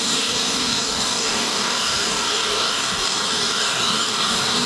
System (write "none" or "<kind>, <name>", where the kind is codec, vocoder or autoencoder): codec, DAC